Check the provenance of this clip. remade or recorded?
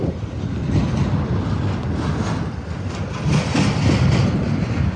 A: recorded